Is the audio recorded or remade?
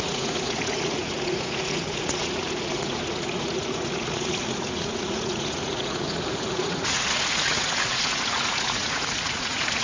remade